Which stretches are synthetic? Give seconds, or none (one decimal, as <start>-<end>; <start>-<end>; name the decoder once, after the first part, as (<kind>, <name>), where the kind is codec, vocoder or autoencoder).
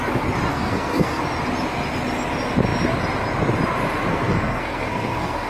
0.5-1.2 (codec, SNAC); 4.1-5.5